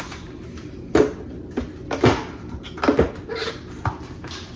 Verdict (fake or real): real